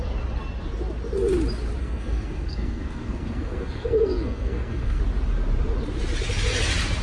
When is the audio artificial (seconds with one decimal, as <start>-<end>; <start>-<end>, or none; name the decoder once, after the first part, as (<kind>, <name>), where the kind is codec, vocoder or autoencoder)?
1.8-5.0 (codec, SNAC)